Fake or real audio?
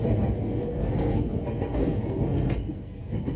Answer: fake